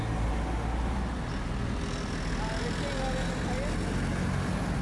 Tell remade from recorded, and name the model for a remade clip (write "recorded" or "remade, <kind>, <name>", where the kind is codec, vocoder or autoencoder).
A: recorded